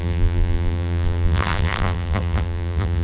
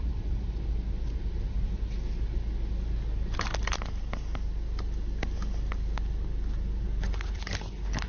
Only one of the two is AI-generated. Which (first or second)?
first